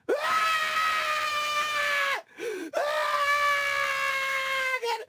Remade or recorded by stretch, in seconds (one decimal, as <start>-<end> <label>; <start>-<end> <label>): 0.0-0.4 remade; 0.4-1.3 recorded; 1.3-1.8 remade; 1.8-4.1 recorded; 4.1-5.1 remade